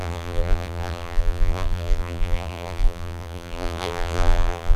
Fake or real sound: fake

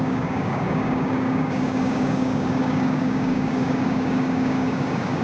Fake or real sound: fake